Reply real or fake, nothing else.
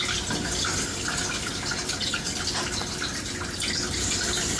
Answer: real